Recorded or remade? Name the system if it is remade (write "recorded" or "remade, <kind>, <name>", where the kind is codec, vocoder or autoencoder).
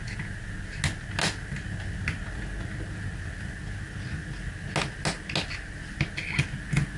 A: recorded